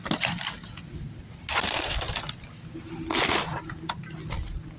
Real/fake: real